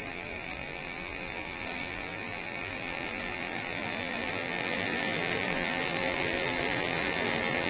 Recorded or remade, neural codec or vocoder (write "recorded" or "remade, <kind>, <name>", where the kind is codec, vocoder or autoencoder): remade, vocoder, BigVGAN v2